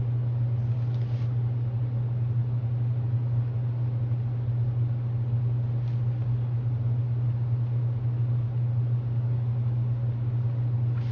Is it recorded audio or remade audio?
recorded